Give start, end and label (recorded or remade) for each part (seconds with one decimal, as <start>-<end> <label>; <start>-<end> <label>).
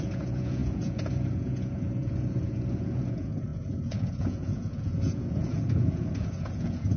0.0-7.0 remade